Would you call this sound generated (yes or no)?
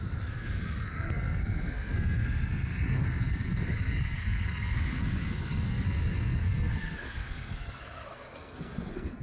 yes